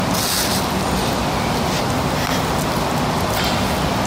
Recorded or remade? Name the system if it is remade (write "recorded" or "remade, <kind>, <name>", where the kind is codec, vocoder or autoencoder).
recorded